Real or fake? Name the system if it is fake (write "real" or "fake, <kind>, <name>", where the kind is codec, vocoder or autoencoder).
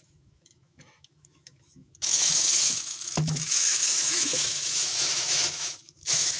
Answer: fake, autoencoder, DAC-VAE